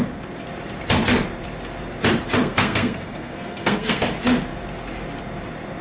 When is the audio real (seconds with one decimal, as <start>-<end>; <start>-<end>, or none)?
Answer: 0.0-2.4; 4.0-5.8

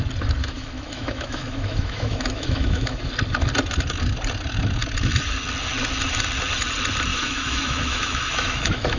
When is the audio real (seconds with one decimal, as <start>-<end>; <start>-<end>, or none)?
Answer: 0.0-0.4; 3.1-7.1

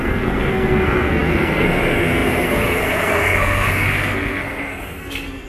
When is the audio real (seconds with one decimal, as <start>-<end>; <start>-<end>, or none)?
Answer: none

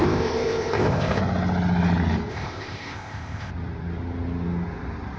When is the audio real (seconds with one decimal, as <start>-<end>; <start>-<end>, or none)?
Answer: 1.2-2.3; 3.5-5.2

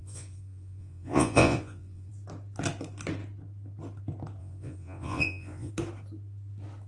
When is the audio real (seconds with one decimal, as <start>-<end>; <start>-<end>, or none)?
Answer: 2.1-4.4; 5.7-6.9

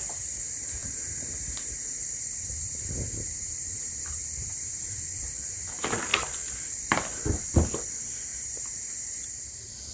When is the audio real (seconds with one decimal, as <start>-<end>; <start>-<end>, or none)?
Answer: none

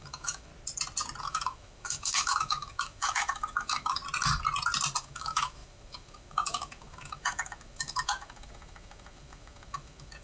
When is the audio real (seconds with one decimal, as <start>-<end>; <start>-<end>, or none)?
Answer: 0.5-1.2; 4.0-5.0

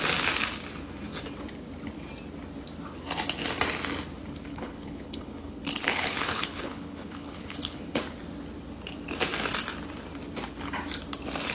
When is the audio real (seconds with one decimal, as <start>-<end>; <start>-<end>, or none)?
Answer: 0.0-4.5; 8.0-11.5